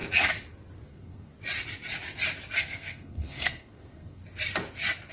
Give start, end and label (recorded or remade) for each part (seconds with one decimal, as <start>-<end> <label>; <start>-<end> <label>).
0.0-0.9 recorded; 0.9-1.3 remade; 1.3-2.6 recorded; 2.6-4.2 remade; 4.2-5.1 recorded